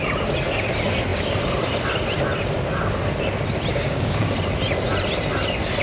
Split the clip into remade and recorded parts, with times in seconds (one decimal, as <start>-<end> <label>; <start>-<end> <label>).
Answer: 0.0-3.7 recorded; 3.7-4.3 remade; 4.3-5.8 recorded